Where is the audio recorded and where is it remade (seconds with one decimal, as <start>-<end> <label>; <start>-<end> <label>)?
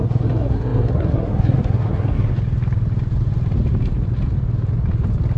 0.0-2.3 remade; 2.3-5.4 recorded